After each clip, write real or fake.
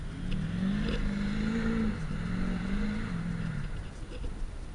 real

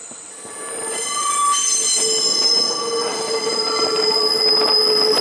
real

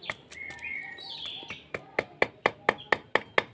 real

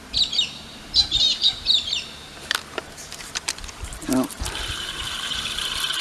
fake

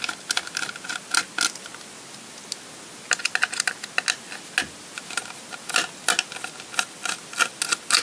real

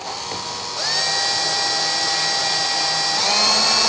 real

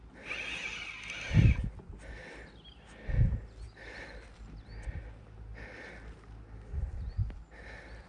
real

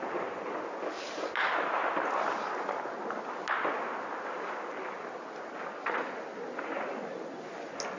real